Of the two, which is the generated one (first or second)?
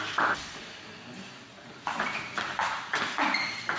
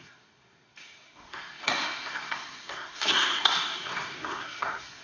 second